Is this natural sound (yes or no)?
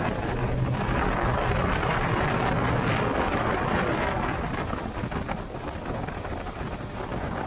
yes